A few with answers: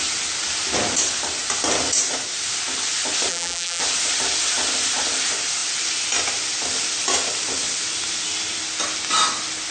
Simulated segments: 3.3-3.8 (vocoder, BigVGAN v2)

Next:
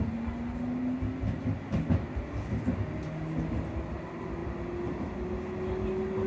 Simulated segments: 4.4-5.1 (vocoder, BigVGAN v2)

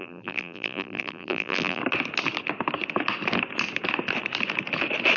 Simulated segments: 0.0-1.8 (vocoder, BigVGAN v2)

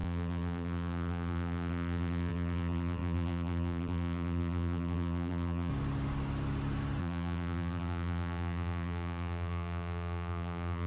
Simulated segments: 0.0-5.7 (vocoder, BigVGAN v2); 7.0-10.9